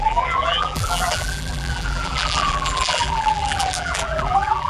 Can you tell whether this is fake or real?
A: fake